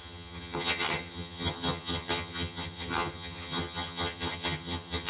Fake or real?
fake